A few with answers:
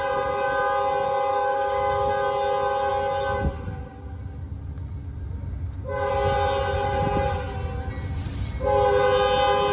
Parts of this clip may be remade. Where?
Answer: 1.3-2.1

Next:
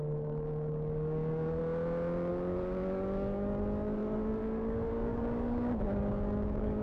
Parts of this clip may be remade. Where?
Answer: 0.0-1.6; 2.3-6.8

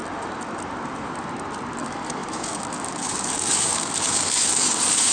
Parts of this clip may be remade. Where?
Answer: 1.8-5.1